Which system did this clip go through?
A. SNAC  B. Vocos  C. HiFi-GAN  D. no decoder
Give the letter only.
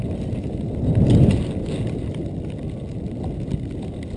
D